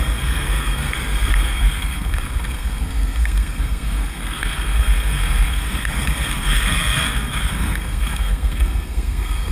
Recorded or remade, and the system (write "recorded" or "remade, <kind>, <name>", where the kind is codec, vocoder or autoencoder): remade, codec, SNAC